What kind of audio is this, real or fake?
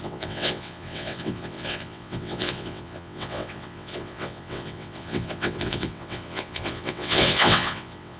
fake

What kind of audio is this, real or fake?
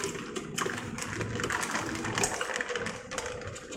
real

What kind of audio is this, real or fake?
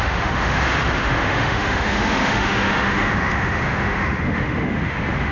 fake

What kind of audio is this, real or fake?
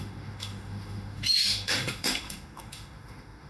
fake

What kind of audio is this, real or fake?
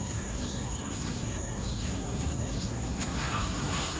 fake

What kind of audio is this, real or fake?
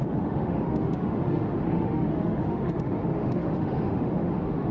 fake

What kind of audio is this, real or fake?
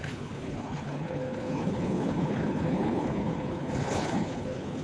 fake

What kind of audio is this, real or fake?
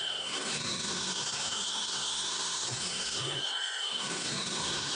fake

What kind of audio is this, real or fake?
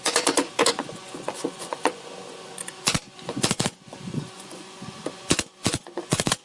fake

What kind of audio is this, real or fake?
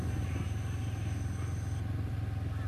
real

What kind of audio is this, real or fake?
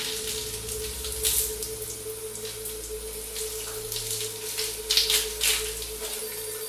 real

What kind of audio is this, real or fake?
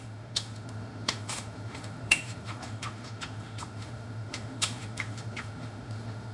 fake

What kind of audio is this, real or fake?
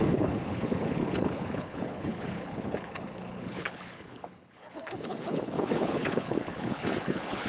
fake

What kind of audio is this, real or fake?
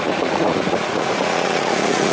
fake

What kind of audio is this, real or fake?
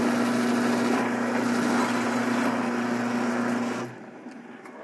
real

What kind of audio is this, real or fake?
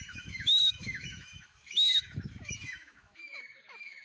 fake